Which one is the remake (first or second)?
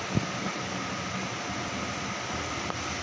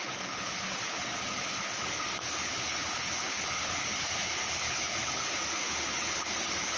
second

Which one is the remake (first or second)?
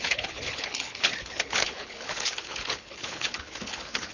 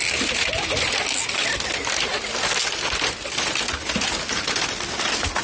first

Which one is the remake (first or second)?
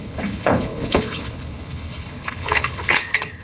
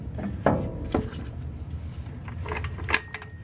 first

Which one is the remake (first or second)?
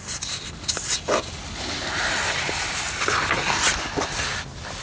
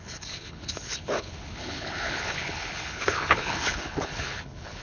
second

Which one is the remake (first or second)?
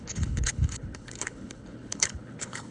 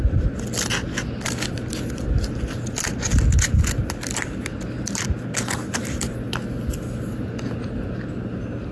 first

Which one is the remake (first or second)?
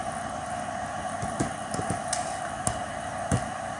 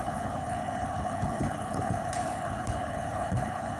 second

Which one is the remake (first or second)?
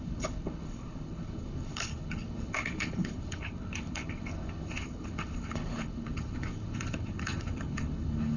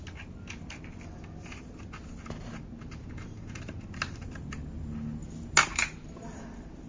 first